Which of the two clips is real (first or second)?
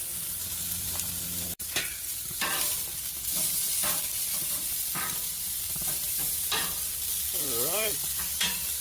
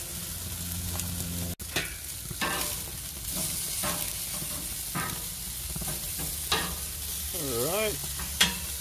second